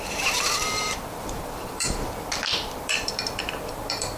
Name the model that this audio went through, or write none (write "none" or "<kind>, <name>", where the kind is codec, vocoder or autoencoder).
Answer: vocoder, BigVGAN v2